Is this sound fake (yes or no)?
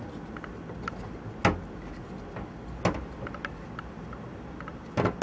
no